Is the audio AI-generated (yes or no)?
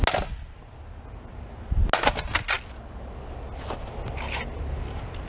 no